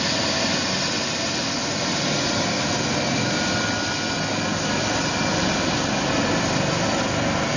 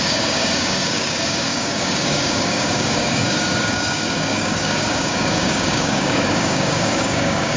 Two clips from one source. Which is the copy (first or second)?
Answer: second